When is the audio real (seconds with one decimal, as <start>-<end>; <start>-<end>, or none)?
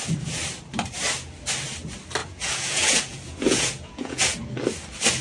0.0-2.2; 4.3-5.2